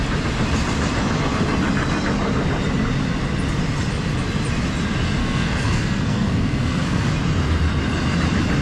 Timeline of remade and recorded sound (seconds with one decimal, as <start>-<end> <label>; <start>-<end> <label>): 0.0-5.2 recorded; 5.2-7.1 remade; 7.1-8.6 recorded